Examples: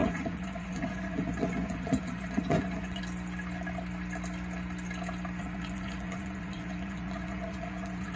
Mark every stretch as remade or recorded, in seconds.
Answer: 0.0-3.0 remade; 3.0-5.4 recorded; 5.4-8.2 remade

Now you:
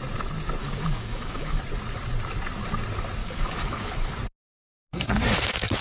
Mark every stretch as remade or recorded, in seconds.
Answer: 0.0-0.6 recorded; 0.6-1.6 remade; 1.6-3.2 recorded; 3.2-4.1 remade; 4.1-5.8 recorded

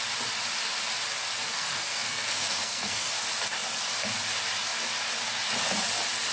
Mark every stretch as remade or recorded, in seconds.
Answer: 0.0-1.4 recorded; 1.4-3.1 remade; 3.1-6.3 recorded

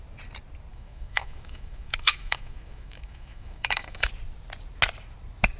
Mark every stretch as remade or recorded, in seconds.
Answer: 0.0-0.7 recorded; 0.7-4.1 remade; 4.1-5.6 recorded

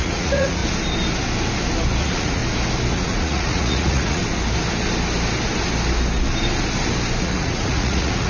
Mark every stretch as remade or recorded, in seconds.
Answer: 0.0-0.6 remade; 0.6-2.0 recorded; 2.0-2.4 remade; 2.4-2.9 recorded; 2.9-4.2 remade; 4.2-7.2 recorded; 7.2-8.3 remade

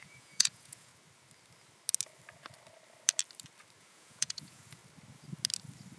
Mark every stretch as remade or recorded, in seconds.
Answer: 0.0-0.9 remade; 0.9-3.8 recorded; 3.8-4.8 remade; 4.8-6.0 recorded